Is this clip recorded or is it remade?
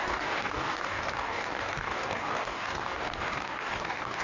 remade